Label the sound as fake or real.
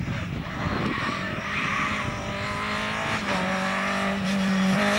real